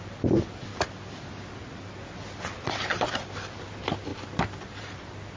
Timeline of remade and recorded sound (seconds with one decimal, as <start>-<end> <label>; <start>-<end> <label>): 0.0-4.1 recorded; 4.1-4.8 remade; 4.8-5.4 recorded